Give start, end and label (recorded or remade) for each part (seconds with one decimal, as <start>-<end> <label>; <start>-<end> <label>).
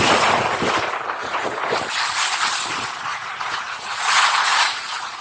0.0-1.2 recorded; 1.2-1.7 remade; 1.7-3.1 recorded; 3.1-5.2 remade